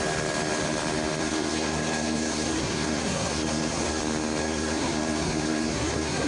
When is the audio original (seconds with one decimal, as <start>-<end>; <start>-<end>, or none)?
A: 0.0-1.2; 4.0-4.4